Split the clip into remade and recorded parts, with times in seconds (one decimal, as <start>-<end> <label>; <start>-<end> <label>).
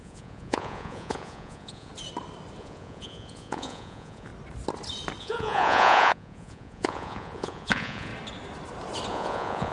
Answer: 0.0-1.9 remade; 1.9-2.6 recorded; 2.6-4.3 remade; 4.3-5.2 recorded; 5.2-8.1 remade; 8.1-9.1 recorded; 9.1-9.7 remade